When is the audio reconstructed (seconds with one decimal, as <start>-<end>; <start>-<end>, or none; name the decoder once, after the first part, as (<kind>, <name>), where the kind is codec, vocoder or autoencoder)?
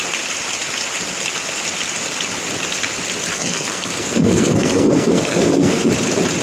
3.3-5.9 (codec, SNAC)